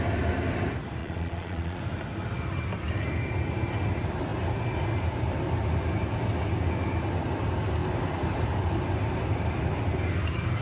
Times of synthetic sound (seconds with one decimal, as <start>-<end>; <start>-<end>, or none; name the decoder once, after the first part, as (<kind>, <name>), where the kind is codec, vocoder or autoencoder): 1.0-1.8 (vocoder, Vocos)